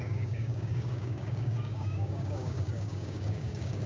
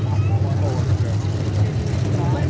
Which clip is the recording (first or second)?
second